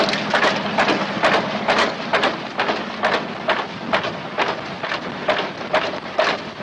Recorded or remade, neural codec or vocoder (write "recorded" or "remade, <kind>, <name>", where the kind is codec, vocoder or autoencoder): recorded